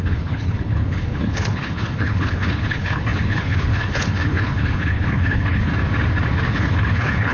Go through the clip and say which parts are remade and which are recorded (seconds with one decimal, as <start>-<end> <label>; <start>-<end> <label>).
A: 0.0-5.7 remade; 5.7-6.5 recorded; 6.5-7.3 remade